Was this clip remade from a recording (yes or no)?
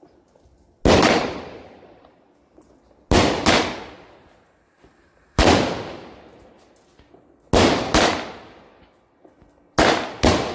no